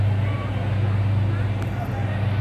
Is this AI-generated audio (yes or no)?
no